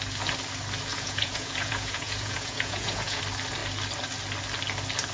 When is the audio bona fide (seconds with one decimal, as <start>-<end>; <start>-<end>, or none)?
0.0-0.9; 3.2-5.1